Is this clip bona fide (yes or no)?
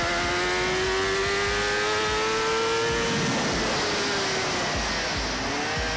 yes